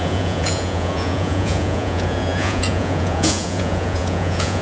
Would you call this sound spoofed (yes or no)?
yes